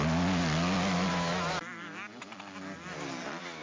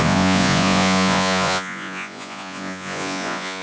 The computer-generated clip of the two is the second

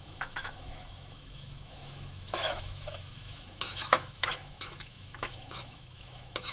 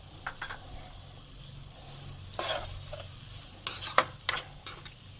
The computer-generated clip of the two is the first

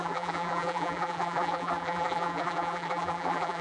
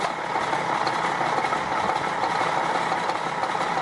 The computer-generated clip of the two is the first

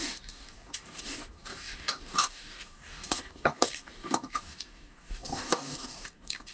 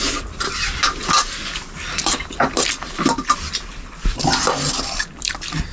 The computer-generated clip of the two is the first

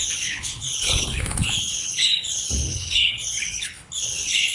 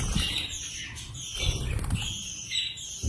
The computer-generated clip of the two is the first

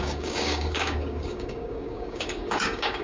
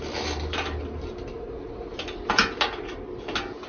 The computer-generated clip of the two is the first